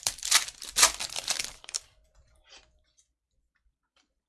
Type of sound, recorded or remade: remade